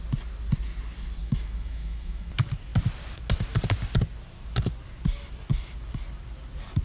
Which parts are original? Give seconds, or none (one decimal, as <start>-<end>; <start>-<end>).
0.0-1.2; 2.3-6.8